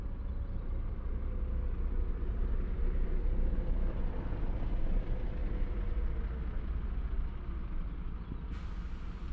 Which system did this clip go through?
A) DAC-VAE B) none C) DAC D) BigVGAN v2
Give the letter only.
B